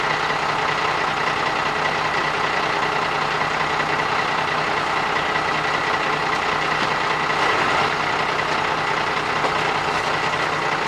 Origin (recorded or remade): recorded